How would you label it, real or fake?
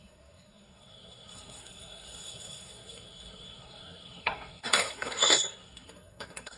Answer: fake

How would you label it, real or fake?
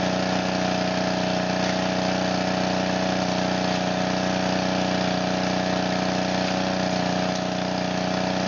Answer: real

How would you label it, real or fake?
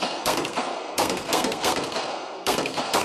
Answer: fake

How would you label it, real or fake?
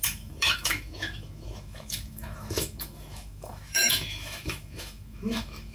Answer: fake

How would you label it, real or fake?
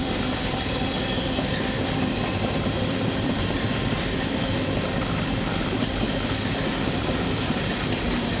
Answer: fake